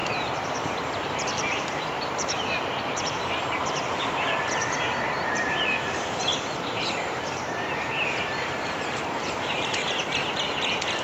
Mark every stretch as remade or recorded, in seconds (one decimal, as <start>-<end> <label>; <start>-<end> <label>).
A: 0.0-3.2 remade; 3.2-4.9 recorded; 4.9-10.0 remade; 10.0-11.0 recorded

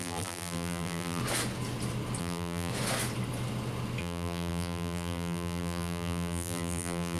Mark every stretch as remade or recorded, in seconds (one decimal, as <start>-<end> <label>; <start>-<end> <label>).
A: 0.0-1.2 remade; 1.2-2.2 recorded; 2.2-2.7 remade; 2.7-4.0 recorded; 4.0-7.2 remade

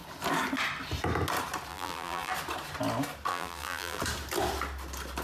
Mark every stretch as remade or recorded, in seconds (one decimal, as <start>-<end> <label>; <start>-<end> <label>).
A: 0.0-1.7 recorded; 1.7-2.3 remade; 2.3-3.3 recorded; 3.3-4.0 remade; 4.0-5.2 recorded

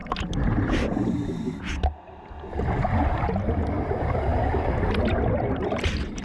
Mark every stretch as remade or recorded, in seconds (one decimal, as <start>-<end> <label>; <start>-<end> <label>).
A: 0.0-6.2 recorded